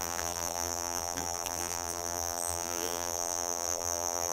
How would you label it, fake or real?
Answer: fake